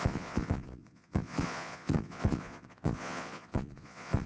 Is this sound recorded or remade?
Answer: remade